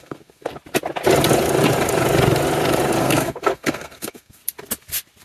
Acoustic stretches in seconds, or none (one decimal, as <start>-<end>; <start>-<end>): 0.5-3.0; 4.4-5.2

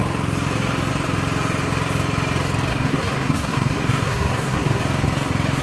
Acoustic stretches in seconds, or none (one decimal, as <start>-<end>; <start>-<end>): 0.0-2.7; 4.8-5.6

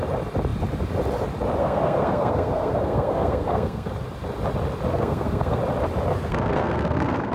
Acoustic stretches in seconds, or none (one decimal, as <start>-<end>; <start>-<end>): 0.0-1.6; 3.9-4.9; 5.6-6.1

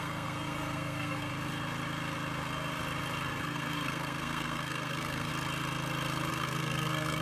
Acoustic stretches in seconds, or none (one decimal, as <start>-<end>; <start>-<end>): 1.3-3.4; 5.3-6.3

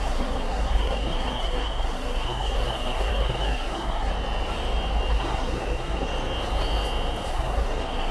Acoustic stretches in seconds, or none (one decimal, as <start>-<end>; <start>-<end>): 4.1-5.1; 6.1-7.3

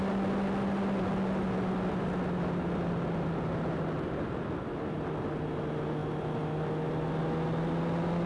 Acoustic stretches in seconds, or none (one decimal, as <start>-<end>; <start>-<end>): 0.0-8.3

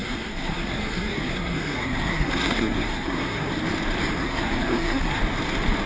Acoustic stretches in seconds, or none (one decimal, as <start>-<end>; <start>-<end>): 3.5-4.2; 5.2-5.9